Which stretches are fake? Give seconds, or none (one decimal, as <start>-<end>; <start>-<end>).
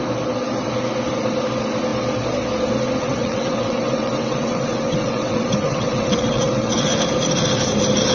3.0-6.9